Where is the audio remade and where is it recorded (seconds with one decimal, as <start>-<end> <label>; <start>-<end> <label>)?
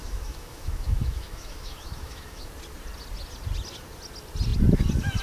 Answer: 0.0-2.5 remade; 2.5-5.2 recorded